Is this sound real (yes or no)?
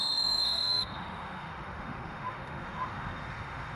no